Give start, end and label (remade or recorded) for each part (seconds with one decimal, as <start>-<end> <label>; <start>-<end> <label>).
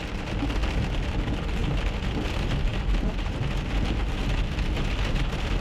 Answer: 0.0-5.6 recorded